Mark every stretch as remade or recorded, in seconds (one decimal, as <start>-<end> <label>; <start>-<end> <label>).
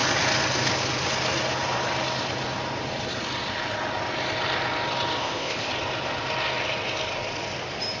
0.0-5.2 recorded; 5.2-5.7 remade; 5.7-8.0 recorded